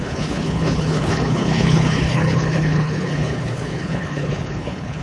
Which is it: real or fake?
fake